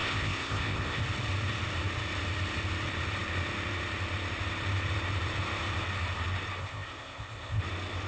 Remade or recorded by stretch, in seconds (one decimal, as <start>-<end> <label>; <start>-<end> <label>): 0.0-1.0 remade; 1.0-6.6 recorded; 6.6-7.6 remade; 7.6-8.1 recorded